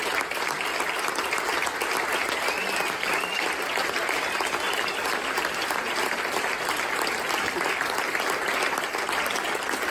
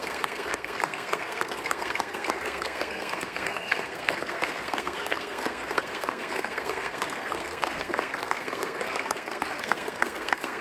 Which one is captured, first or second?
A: first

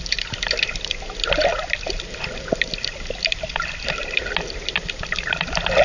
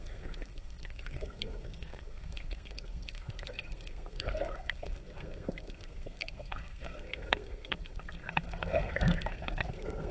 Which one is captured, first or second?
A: first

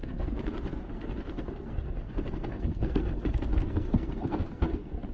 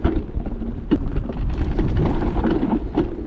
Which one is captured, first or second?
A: second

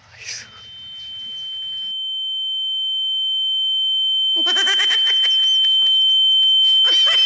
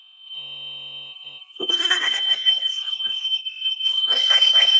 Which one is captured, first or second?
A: first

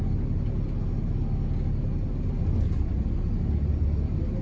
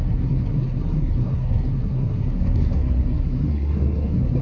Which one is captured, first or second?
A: first